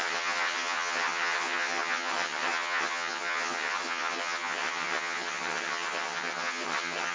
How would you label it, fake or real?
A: fake